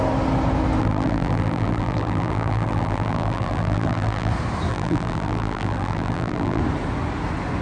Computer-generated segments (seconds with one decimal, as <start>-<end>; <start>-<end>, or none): 0.8-4.3; 4.7-6.6